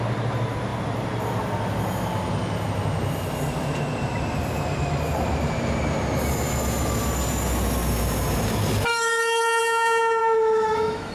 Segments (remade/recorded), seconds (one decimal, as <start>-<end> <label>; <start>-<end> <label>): 0.0-8.9 recorded; 8.9-9.6 remade; 9.6-10.2 recorded; 10.2-11.1 remade